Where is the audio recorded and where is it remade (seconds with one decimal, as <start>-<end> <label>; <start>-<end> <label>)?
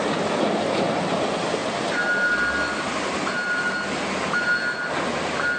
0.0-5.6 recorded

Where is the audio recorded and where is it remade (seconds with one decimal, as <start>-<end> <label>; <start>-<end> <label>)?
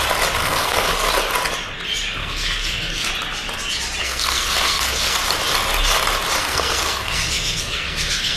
0.0-0.4 recorded; 0.4-1.1 remade; 1.1-2.2 recorded; 2.2-3.1 remade; 3.1-4.0 recorded; 4.0-5.2 remade; 5.2-6.4 recorded; 6.4-8.4 remade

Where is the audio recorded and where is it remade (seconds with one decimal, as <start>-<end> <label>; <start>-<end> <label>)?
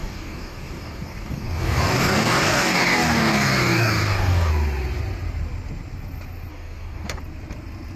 0.0-4.5 remade; 4.5-6.5 recorded; 6.5-7.2 remade; 7.2-8.0 recorded